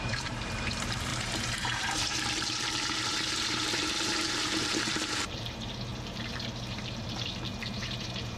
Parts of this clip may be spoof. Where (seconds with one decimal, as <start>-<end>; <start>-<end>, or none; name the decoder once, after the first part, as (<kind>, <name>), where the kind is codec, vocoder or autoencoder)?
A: 0.0-8.4 (vocoder, BigVGAN v2)